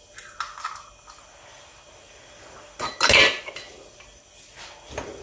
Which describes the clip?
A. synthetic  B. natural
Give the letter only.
B